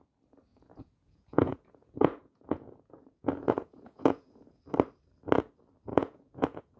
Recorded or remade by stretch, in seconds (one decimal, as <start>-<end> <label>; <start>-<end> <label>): 0.0-0.5 recorded; 0.5-4.6 remade; 4.6-5.9 recorded; 5.9-6.8 remade